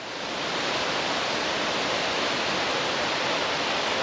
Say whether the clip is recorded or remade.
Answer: recorded